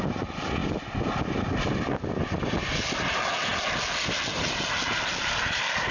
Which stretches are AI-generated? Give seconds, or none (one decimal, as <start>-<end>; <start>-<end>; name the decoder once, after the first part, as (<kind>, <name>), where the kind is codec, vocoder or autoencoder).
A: 0.0-0.6 (vocoder, BigVGAN v2); 2.9-5.9